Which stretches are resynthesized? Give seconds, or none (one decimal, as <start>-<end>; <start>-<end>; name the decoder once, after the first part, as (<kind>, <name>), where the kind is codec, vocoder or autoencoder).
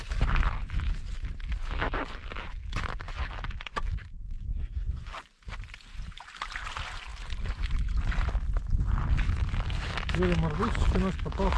4.5-5.1 (codec, SNAC)